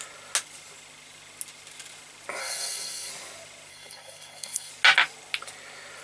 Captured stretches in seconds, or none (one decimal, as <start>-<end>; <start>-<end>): 0.0-2.4; 3.1-3.7; 4.7-6.0